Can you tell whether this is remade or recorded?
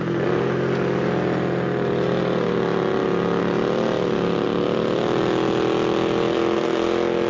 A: recorded